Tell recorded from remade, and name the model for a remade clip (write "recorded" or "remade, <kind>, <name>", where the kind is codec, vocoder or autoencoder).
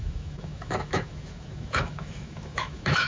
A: remade, autoencoder, DAC-VAE